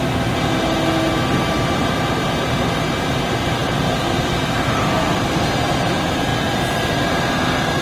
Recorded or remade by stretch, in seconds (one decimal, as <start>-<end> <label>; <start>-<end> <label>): 0.0-7.8 recorded